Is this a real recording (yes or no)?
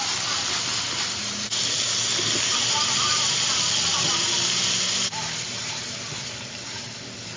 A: yes